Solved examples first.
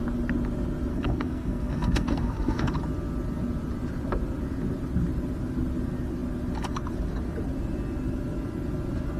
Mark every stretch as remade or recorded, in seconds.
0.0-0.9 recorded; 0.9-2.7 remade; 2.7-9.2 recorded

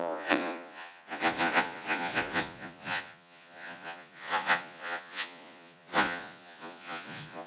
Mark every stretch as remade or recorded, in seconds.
0.0-7.5 remade

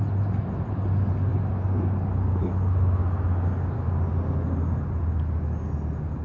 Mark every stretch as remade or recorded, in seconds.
0.0-6.2 recorded

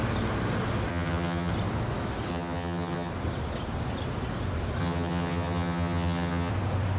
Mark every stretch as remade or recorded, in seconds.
0.0-0.9 recorded; 0.9-1.5 remade; 1.5-2.3 recorded; 2.3-3.1 remade; 3.1-4.8 recorded; 4.8-6.5 remade; 6.5-7.0 recorded

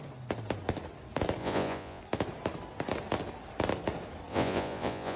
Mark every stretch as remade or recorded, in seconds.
0.0-1.4 recorded; 1.4-2.0 remade; 2.0-4.3 recorded; 4.3-5.2 remade

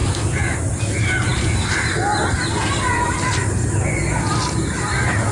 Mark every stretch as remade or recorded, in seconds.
0.0-5.3 recorded

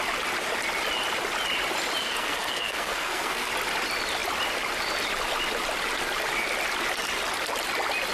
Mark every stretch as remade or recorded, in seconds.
0.0-2.0 recorded; 2.0-3.5 remade; 3.5-8.1 recorded